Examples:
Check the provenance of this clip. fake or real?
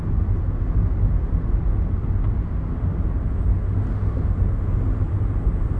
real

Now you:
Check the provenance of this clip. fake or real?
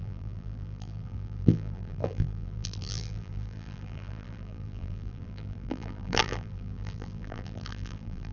fake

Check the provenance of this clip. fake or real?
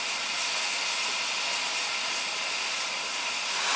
real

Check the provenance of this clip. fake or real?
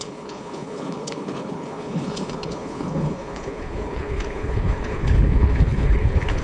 fake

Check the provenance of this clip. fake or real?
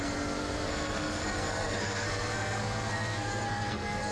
fake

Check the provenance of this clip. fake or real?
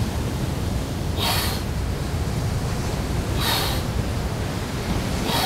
fake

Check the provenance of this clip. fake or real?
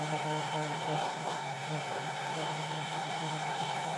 fake